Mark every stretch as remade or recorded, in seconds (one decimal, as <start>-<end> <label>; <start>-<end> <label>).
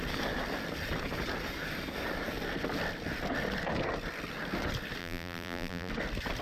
0.0-5.0 recorded; 5.0-5.9 remade; 5.9-6.4 recorded